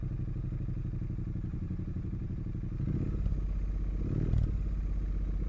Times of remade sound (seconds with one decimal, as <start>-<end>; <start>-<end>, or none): 1.5-2.4